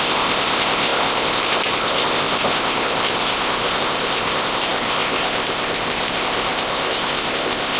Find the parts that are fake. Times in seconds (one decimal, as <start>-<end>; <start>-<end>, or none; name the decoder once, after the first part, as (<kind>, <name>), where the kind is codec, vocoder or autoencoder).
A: 0.0-7.8 (codec, ZipCodec)